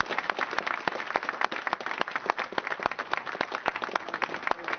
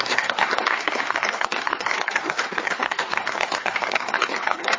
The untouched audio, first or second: first